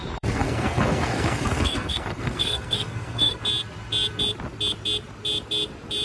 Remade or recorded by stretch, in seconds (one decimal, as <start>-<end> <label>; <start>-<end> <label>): 0.0-3.4 remade; 3.4-6.0 recorded